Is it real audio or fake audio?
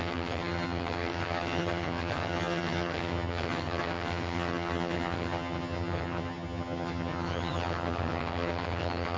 fake